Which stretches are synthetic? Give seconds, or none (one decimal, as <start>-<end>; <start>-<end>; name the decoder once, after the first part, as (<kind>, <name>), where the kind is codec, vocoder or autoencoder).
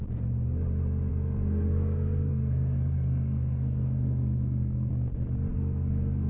1.1-4.9 (codec, SNAC); 5.5-6.3